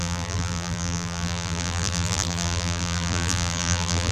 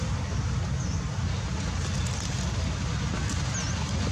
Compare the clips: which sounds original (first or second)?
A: second